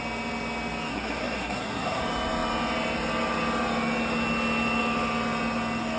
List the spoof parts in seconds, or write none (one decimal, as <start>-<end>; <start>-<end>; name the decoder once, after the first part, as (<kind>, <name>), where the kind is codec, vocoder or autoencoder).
0.9-2.0 (codec, SNAC)